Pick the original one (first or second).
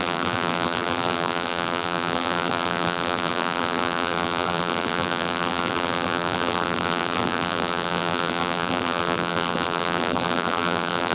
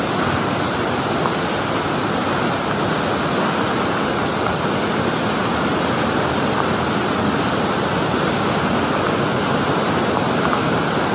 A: second